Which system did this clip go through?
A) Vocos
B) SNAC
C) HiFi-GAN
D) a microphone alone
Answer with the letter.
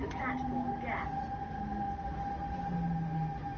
D